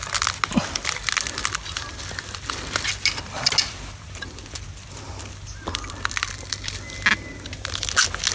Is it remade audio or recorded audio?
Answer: recorded